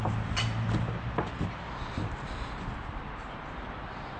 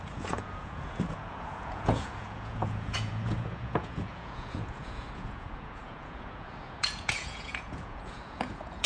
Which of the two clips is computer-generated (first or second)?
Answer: second